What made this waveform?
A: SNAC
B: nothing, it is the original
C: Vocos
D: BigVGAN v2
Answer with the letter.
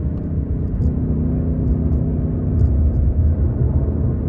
B